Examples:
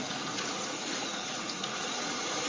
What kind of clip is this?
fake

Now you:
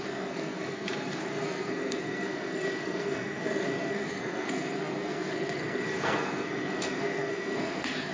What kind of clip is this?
fake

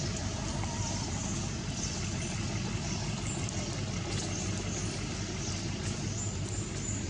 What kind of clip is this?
real